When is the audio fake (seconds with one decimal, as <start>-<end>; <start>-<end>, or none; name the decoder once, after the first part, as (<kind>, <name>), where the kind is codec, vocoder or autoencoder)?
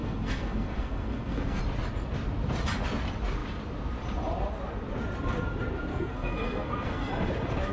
0.0-1.6 (codec, SNAC); 5.9-7.1